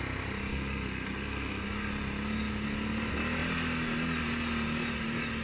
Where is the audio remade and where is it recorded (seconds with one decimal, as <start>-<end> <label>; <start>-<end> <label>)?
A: 0.0-0.5 recorded; 0.5-1.9 remade; 1.9-5.4 recorded